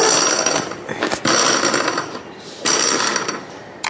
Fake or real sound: real